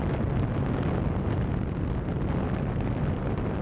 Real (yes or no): yes